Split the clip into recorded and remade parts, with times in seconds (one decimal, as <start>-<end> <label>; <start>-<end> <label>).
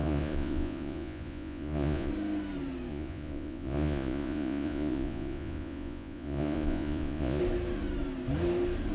0.0-2.1 remade; 2.1-2.9 recorded; 2.9-7.4 remade; 7.4-8.9 recorded